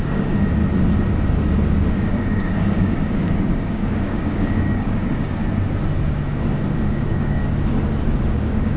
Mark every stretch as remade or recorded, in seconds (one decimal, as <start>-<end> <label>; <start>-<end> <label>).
0.0-0.6 remade; 0.6-2.1 recorded; 2.1-5.4 remade; 5.4-6.9 recorded; 6.9-7.4 remade; 7.4-8.3 recorded; 8.3-8.8 remade